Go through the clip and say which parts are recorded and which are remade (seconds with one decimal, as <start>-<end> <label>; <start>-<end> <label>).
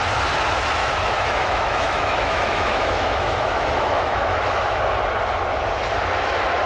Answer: 0.0-0.8 recorded; 0.8-4.8 remade; 4.8-6.7 recorded